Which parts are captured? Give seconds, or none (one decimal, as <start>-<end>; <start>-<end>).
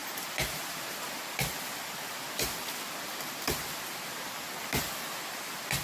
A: 0.0-5.8